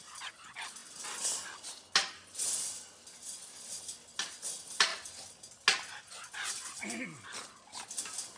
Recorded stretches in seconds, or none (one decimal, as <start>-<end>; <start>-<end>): 0.0-8.4